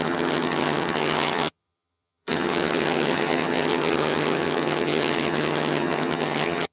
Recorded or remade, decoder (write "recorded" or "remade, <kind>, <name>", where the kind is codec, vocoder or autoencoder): remade, vocoder, HiFi-GAN